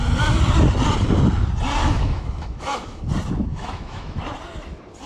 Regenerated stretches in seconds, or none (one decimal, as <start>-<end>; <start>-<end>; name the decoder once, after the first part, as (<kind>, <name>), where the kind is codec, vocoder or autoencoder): 1.8-3.0 (autoencoder, DAC-VAE); 3.5-4.2